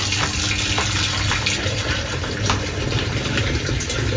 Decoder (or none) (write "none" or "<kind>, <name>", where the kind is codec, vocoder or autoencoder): none